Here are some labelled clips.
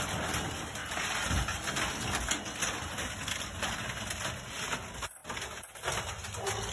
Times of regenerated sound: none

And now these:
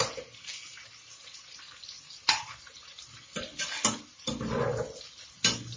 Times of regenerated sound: none

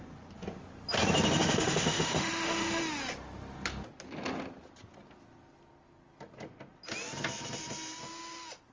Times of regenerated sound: 1.4-2.8 (autoencoder, DAC-VAE)

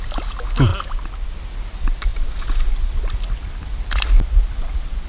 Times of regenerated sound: none

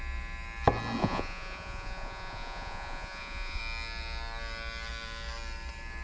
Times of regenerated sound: 1.0-3.6 (vocoder, Vocos)

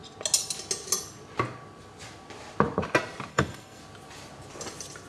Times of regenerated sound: 3.3-3.8 (codec, SNAC)

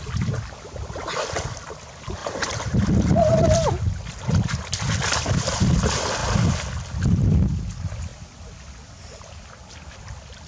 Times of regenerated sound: 2.2-2.7 (vocoder, BigVGAN v2)